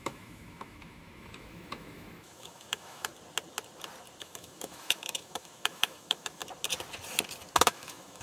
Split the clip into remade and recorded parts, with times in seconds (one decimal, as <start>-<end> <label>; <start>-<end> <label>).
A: 0.0-3.1 remade; 3.1-4.2 recorded; 4.2-6.4 remade; 6.4-7.6 recorded; 7.6-8.2 remade